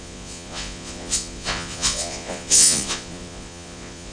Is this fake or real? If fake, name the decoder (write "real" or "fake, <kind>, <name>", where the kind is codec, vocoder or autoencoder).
fake, vocoder, Vocos